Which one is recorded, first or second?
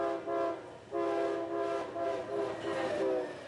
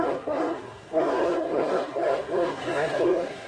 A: first